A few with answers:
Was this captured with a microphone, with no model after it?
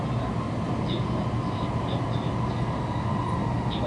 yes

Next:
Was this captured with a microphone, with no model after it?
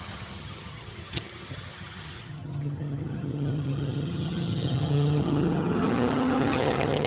no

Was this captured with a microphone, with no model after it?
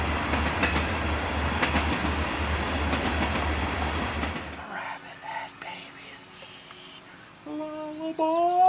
yes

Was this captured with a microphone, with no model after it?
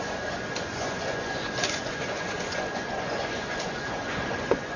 no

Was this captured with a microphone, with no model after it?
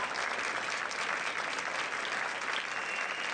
yes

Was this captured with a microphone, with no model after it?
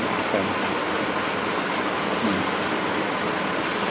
yes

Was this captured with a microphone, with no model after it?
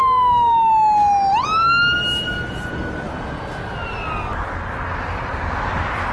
yes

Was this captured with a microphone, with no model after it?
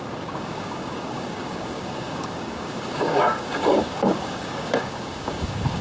no